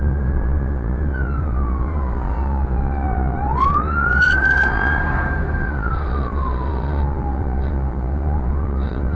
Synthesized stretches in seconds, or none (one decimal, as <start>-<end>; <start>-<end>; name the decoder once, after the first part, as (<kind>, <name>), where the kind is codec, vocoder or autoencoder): 0.0-5.0 (vocoder, Vocos); 5.6-9.1